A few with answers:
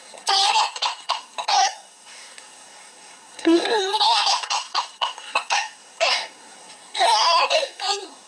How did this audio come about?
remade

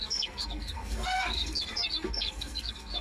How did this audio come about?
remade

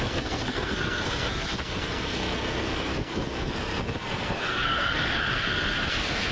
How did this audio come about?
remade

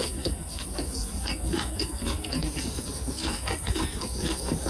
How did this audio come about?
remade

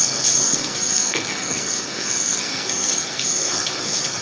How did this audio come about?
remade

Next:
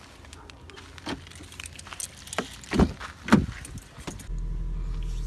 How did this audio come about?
recorded